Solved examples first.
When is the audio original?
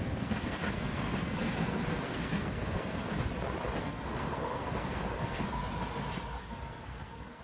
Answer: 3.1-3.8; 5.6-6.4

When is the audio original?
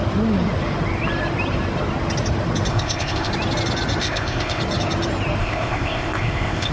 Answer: 0.0-2.7; 3.3-4.0; 4.6-5.4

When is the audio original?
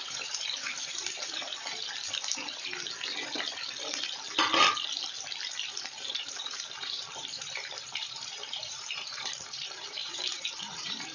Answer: 1.4-6.1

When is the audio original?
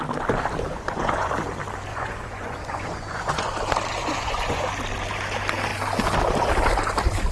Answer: 0.0-0.7; 1.3-1.9; 3.5-4.0; 4.6-7.3